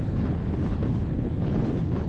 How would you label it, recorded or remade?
remade